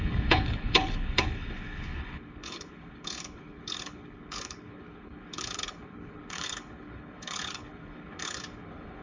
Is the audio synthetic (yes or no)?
yes